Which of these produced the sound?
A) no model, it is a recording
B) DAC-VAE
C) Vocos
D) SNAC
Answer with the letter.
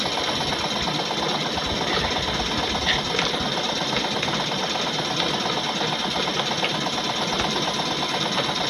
A